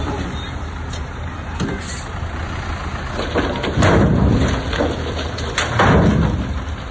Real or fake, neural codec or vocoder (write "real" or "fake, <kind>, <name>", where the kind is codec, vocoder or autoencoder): real